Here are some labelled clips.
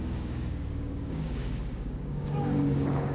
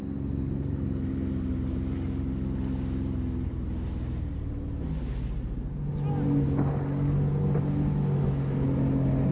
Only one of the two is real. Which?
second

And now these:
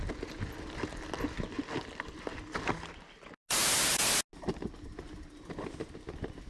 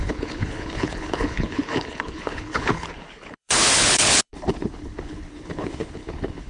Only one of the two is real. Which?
first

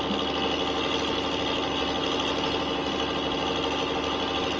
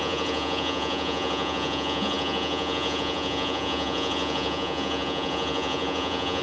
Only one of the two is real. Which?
first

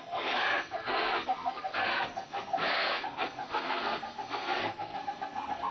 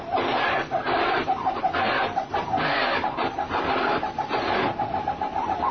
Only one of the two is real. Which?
second